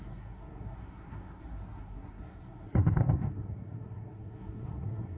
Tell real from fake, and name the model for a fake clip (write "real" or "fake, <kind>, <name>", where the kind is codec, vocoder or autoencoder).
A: fake, codec, SNAC